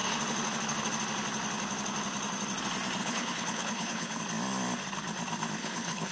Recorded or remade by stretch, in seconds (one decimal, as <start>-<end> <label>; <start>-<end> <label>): 0.0-3.0 recorded; 3.0-4.2 remade; 4.2-5.6 recorded; 5.6-6.1 remade